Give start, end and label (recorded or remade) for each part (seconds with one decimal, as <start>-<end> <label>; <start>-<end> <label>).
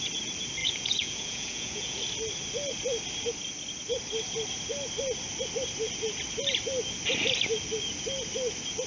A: 0.0-0.6 recorded; 0.6-2.0 remade; 2.0-8.9 recorded